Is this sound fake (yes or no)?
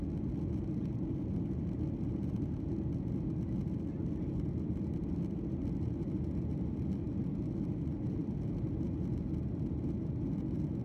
no